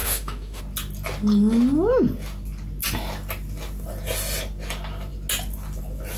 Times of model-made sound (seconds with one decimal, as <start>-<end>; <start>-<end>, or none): 0.0-0.6